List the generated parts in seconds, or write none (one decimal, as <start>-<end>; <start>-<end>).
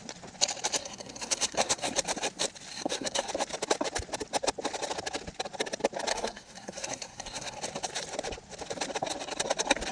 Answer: 0.8-1.9; 2.7-3.3; 6.1-7.6